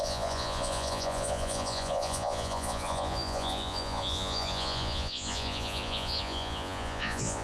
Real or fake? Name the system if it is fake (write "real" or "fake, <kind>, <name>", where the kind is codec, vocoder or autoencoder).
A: fake, vocoder, Vocos